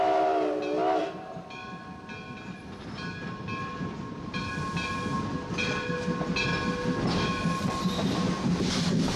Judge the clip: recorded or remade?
recorded